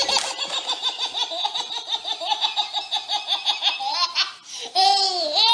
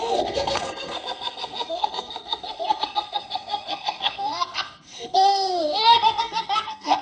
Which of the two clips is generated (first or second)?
second